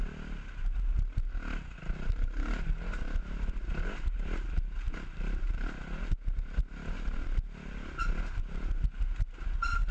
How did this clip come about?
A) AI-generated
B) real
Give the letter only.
B